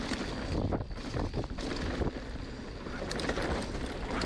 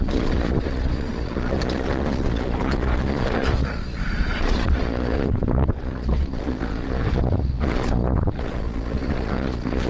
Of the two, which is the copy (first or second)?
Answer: second